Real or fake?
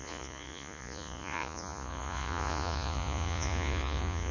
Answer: fake